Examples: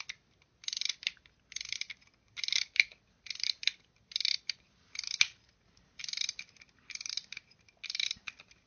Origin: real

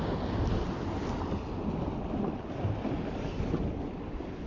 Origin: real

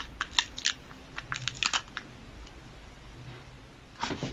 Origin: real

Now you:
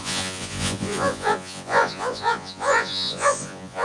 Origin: fake